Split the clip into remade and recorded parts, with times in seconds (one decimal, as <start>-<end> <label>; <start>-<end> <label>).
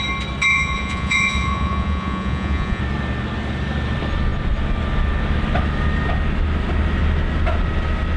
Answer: 0.0-0.5 recorded; 0.5-2.8 remade; 2.8-8.2 recorded